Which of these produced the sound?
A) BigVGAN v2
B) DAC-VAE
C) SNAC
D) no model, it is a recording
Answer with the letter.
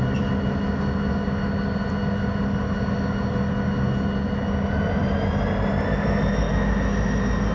D